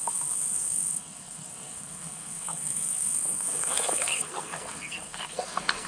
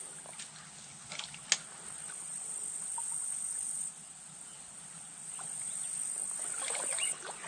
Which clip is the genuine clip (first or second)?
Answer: second